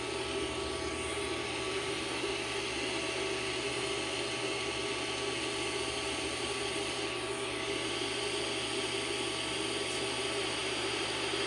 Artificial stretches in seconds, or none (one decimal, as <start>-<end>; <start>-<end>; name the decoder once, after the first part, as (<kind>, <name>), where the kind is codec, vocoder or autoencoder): 10.6-11.1 (vocoder, BigVGAN v2)